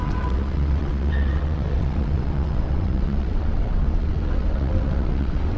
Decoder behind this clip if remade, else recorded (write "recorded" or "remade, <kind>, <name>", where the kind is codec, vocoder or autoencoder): remade, vocoder, WaveNeXt